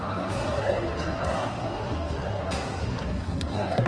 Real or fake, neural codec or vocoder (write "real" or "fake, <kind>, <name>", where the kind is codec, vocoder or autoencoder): fake, codec, SNAC